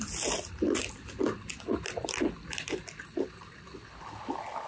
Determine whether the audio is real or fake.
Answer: real